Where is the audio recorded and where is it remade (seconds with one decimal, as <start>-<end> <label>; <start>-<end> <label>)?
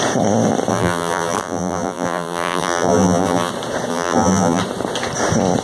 0.0-0.7 recorded; 0.7-3.5 remade; 3.5-3.9 recorded; 3.9-4.6 remade; 4.6-5.6 recorded